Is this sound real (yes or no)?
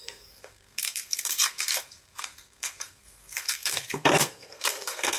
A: no